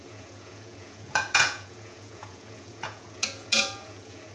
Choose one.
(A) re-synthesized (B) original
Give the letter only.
A